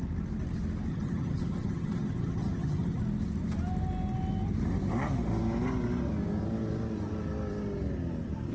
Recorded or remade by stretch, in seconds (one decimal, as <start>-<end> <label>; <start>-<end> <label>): 0.0-0.9 recorded; 0.9-3.0 remade; 3.0-8.5 recorded